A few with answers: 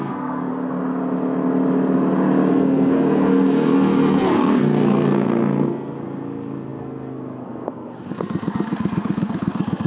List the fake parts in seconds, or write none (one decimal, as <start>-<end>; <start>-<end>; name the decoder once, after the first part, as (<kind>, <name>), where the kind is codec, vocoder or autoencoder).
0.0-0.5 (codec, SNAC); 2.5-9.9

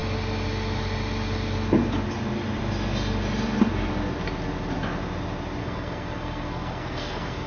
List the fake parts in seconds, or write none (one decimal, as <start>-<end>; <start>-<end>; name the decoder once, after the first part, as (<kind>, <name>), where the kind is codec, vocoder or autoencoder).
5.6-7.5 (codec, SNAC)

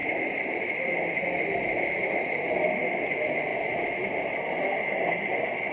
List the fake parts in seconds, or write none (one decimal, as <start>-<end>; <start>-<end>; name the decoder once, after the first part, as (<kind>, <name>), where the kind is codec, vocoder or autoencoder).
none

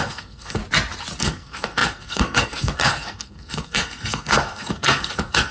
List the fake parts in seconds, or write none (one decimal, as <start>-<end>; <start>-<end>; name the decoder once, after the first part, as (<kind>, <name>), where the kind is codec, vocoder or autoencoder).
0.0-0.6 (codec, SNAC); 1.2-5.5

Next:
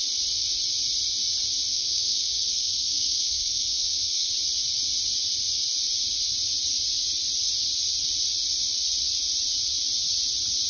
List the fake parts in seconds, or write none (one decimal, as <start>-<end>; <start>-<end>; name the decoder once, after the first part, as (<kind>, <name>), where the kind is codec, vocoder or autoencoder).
1.7-4.3 (codec, SNAC)